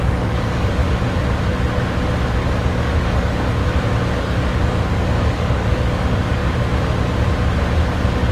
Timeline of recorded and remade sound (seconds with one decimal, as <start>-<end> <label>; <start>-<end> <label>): 0.0-0.8 remade; 0.8-2.8 recorded; 2.8-3.6 remade; 3.6-4.2 recorded; 4.2-6.4 remade; 6.4-8.3 recorded